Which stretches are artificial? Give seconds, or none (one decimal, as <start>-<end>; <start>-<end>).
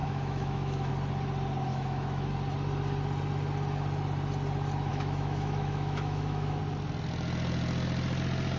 0.0-0.9; 1.7-2.3; 4.9-6.6